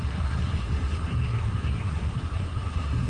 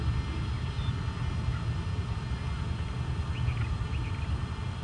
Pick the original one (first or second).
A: second